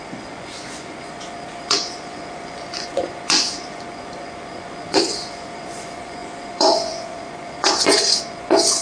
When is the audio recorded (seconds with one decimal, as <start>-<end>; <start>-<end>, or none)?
none